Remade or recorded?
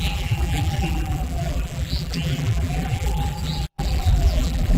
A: remade